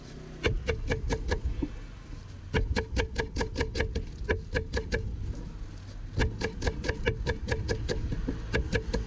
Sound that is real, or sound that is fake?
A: real